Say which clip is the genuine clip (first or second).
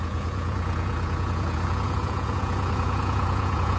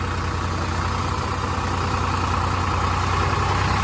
second